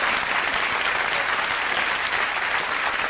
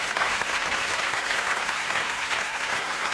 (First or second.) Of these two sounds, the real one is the first